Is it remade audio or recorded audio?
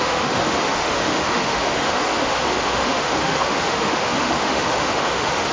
remade